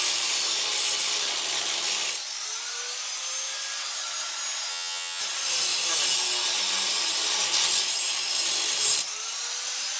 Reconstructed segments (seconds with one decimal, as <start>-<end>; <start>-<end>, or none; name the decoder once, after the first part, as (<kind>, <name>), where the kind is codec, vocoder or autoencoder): 4.7-5.2 (vocoder, HiFi-GAN)